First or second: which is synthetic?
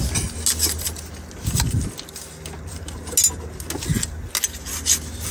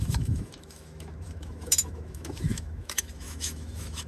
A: second